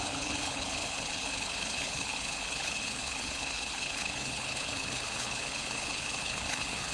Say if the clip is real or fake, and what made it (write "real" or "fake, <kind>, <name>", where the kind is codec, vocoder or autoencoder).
fake, codec, HILCodec